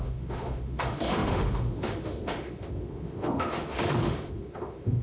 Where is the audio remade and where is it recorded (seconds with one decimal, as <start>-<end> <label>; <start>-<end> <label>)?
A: 0.0-5.0 remade